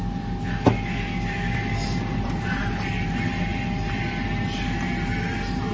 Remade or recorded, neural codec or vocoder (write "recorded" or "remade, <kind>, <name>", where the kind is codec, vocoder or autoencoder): recorded